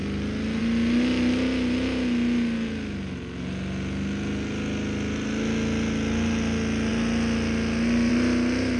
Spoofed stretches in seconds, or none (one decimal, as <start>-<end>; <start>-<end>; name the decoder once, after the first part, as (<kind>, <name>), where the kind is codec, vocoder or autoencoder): none